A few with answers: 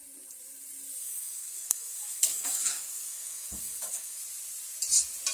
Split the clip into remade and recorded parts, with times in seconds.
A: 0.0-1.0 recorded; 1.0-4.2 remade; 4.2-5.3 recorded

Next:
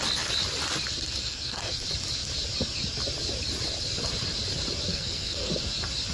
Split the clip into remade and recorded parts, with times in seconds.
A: 0.0-1.2 recorded; 1.2-1.8 remade; 1.8-4.9 recorded; 4.9-5.5 remade; 5.5-6.1 recorded

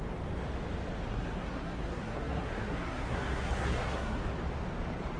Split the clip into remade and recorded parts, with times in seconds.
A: 0.0-1.1 recorded; 1.1-4.2 remade; 4.2-5.2 recorded

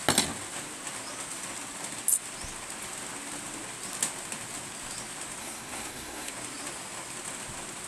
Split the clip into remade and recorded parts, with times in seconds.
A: 0.0-5.4 recorded; 5.4-6.3 remade; 6.3-7.9 recorded

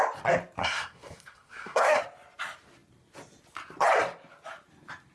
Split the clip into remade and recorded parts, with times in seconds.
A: 0.0-0.6 recorded; 0.6-2.0 remade; 2.0-5.1 recorded

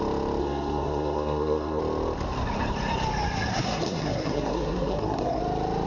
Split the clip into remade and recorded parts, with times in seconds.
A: 0.0-0.4 recorded; 0.4-1.8 remade; 1.8-3.5 recorded; 3.5-5.4 remade; 5.4-5.9 recorded